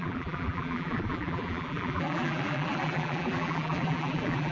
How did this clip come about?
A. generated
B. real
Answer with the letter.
A